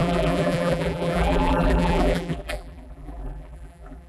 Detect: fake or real fake